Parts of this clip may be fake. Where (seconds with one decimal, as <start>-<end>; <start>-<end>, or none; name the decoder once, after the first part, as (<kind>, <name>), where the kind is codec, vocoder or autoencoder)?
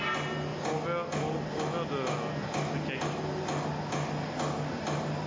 none